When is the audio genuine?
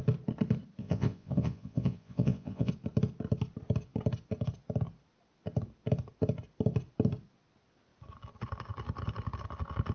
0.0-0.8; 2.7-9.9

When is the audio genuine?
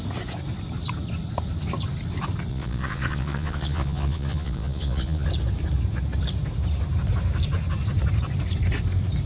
0.0-2.5; 5.3-9.3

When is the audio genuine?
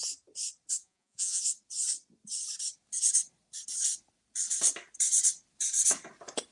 0.0-0.8; 1.4-6.5